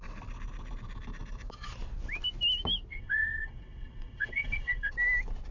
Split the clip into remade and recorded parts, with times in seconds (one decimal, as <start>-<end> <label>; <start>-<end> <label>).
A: 0.0-2.9 recorded; 2.9-4.9 remade; 4.9-5.5 recorded